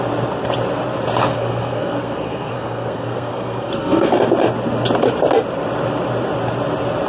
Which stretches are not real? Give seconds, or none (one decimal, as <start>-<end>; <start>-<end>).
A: 1.3-4.1